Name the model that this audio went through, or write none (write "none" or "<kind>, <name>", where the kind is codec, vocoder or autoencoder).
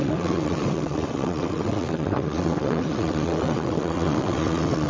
vocoder, WaveNeXt